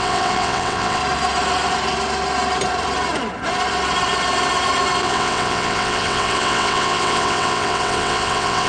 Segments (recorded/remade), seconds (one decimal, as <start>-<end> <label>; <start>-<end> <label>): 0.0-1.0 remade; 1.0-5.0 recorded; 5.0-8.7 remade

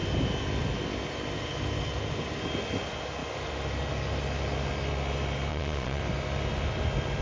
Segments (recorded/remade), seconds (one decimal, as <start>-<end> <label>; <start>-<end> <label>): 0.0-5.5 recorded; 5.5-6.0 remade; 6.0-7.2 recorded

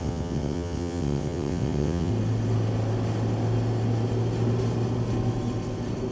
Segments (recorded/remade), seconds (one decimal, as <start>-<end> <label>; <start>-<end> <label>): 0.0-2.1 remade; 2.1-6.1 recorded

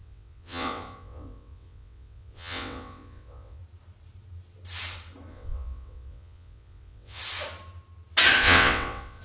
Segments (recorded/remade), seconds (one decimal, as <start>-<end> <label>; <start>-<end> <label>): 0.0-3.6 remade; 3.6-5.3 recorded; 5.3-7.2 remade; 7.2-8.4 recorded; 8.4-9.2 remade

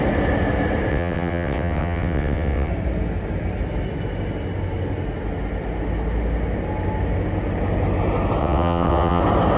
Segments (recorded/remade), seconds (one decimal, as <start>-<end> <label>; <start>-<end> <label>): 0.0-0.9 recorded; 0.9-2.7 remade; 2.7-8.4 recorded; 8.4-9.2 remade; 9.2-9.6 recorded